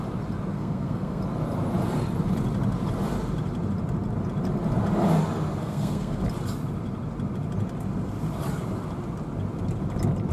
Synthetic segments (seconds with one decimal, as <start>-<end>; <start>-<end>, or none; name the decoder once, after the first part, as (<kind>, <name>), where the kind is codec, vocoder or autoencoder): 0.5-1.2 (codec, SNAC); 5.6-6.2